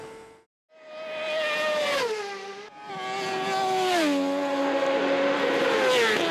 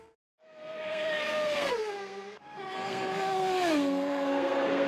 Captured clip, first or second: first